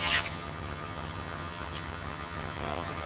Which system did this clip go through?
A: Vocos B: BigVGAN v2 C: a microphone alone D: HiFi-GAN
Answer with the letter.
D